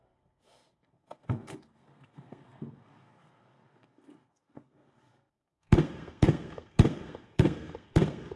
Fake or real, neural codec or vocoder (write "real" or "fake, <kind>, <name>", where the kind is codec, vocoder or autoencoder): fake, codec, SNAC